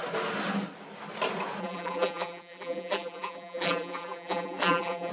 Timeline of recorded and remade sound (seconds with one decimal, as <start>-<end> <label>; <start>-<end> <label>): 0.0-1.6 recorded; 1.6-5.1 remade